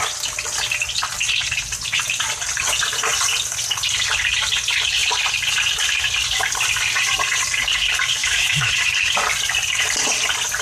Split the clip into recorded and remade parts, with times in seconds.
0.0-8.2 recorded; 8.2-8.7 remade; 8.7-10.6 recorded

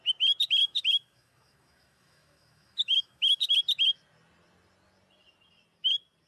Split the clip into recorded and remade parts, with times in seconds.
0.0-0.6 recorded; 0.6-3.5 remade; 3.5-6.3 recorded

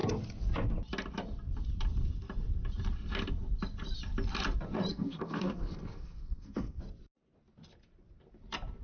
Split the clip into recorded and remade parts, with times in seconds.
0.0-4.9 recorded; 4.9-6.8 remade; 6.8-8.8 recorded

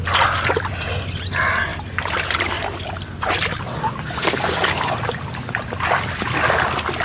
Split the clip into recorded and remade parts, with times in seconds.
0.0-7.0 recorded

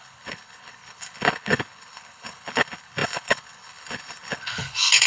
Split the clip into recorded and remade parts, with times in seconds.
0.0-5.1 remade

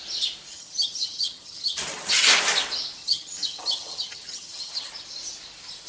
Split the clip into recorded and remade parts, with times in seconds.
0.0-0.5 recorded; 0.5-2.1 remade; 2.1-3.0 recorded; 3.0-4.9 remade; 4.9-5.9 recorded

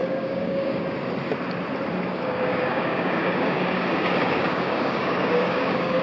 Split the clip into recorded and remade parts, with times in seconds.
0.0-0.8 remade; 0.8-2.1 recorded; 2.1-6.0 remade

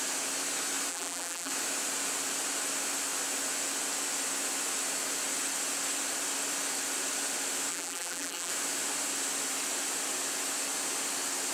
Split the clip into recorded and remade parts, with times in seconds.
0.0-0.9 recorded; 0.9-1.5 remade; 1.5-7.7 recorded; 7.7-8.5 remade; 8.5-11.5 recorded